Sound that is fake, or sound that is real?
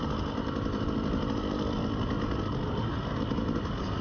real